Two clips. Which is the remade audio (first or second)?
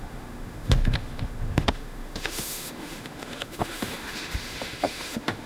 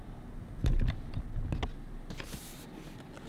first